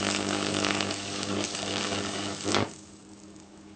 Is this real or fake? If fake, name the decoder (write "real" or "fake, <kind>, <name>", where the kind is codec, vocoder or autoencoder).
fake, codec, DAC